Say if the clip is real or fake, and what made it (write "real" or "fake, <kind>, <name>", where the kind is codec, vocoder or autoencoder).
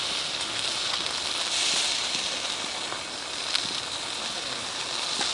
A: real